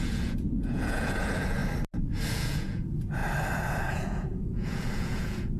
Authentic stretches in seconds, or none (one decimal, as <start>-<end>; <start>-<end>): 1.6-2.3; 3.2-3.9